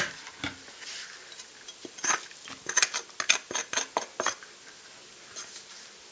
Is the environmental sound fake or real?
real